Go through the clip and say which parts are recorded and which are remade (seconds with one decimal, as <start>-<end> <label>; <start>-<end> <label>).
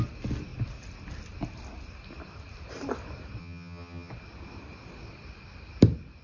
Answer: 0.0-3.4 recorded; 3.4-4.1 remade; 4.1-6.2 recorded